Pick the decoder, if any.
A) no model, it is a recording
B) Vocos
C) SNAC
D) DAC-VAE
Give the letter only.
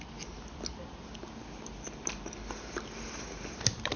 A